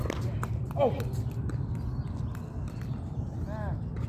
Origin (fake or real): real